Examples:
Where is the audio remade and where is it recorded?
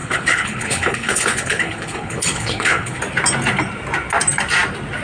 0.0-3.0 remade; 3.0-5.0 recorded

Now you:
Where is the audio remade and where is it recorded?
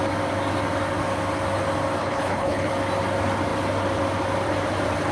0.0-2.0 recorded; 2.0-2.7 remade; 2.7-5.1 recorded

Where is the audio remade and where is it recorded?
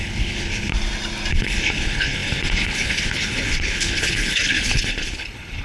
0.0-0.7 remade; 0.7-1.3 recorded; 1.3-5.6 remade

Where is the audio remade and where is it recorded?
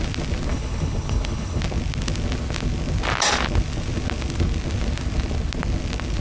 0.0-0.5 recorded; 0.5-1.6 remade; 1.6-6.2 recorded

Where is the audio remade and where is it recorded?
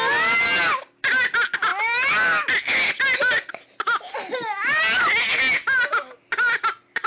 0.0-7.1 recorded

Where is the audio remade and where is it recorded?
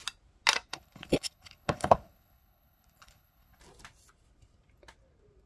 0.0-0.7 recorded; 0.7-3.6 remade; 3.6-5.5 recorded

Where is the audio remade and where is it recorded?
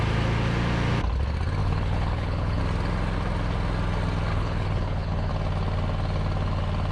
0.0-1.6 recorded; 1.6-2.6 remade; 2.6-4.3 recorded; 4.3-5.3 remade; 5.3-6.9 recorded